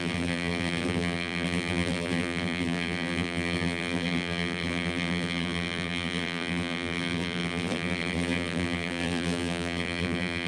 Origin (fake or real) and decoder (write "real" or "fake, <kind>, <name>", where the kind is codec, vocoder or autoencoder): fake, vocoder, BigVGAN v2